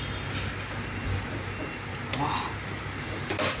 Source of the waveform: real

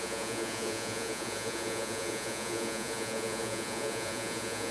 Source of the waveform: fake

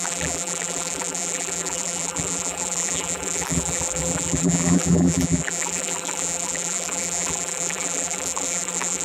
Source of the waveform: fake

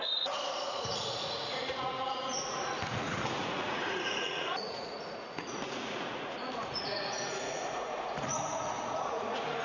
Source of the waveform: fake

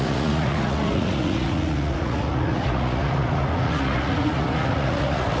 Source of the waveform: fake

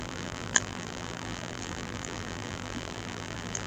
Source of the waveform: fake